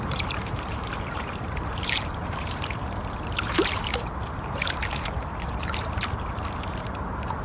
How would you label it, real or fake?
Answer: fake